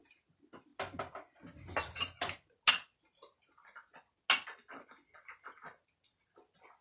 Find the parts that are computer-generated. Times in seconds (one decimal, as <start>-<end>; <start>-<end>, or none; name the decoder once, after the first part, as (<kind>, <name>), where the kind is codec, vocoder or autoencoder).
none

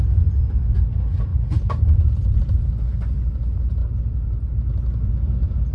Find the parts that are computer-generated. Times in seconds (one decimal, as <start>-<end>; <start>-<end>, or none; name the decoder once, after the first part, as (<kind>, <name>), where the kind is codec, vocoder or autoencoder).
1.3-2.6 (vocoder, BigVGAN v2)

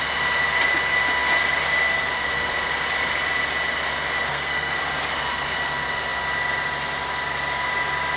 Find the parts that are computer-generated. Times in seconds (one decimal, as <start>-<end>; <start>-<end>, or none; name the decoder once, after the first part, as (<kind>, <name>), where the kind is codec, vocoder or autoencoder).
4.3-4.8 (codec, SNAC)

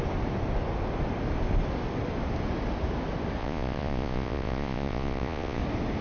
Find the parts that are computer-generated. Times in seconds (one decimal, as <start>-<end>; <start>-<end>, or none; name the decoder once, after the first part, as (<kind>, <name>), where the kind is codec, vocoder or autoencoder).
3.4-5.6 (vocoder, Vocos)

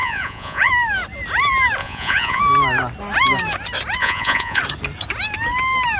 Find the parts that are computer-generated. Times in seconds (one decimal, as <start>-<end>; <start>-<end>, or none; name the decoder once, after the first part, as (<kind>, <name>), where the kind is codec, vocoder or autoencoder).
0.0-0.7 (vocoder, Vocos); 1.8-2.4; 4.0-4.6

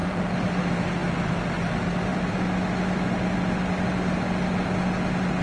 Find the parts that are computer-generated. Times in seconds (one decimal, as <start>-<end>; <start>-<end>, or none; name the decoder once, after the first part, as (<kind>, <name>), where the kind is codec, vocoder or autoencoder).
0.0-0.6 (vocoder, BigVGAN v2)